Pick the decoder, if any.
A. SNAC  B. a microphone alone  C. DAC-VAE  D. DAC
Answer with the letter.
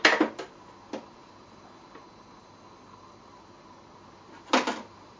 B